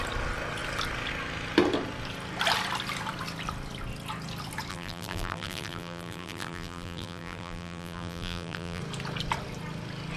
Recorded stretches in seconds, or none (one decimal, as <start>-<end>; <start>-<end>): 0.0-4.7; 8.8-10.2